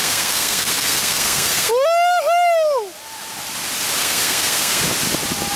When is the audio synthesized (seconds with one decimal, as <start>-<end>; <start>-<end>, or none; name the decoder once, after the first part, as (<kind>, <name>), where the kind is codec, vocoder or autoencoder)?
0.0-1.7 (codec, SNAC); 4.0-4.8